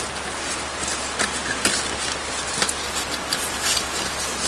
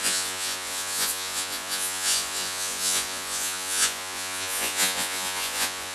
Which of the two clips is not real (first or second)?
second